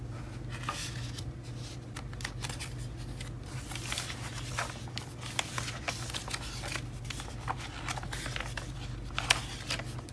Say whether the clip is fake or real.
real